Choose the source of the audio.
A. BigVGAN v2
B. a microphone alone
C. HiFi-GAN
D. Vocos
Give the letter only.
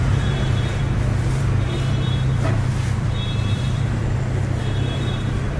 A